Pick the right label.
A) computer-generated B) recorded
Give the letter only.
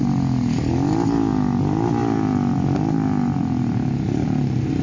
B